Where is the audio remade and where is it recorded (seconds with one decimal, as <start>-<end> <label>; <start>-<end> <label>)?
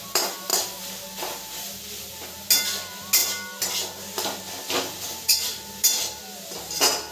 0.0-7.1 recorded